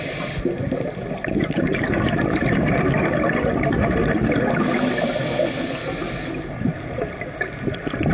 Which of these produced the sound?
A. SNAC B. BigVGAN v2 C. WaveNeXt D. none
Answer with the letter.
D